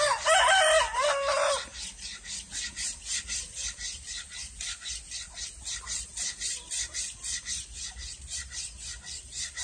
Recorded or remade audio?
recorded